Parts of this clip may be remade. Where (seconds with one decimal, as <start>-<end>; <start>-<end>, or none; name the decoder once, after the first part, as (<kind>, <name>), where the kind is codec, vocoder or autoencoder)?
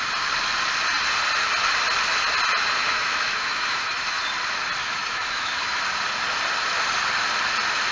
2.8-4.2 (autoencoder, DAC-VAE); 4.8-5.8